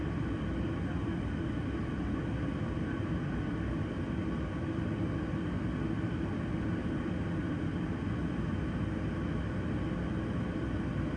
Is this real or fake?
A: real